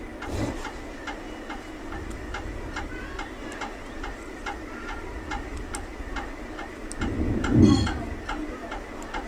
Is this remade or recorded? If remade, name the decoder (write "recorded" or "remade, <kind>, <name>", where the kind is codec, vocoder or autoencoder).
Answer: recorded